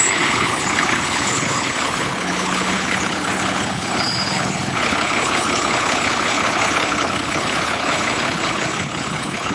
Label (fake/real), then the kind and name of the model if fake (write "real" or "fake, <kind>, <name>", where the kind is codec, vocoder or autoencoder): fake, codec, HILCodec